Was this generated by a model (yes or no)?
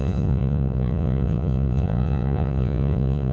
yes